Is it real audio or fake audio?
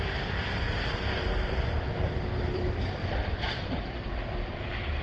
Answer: fake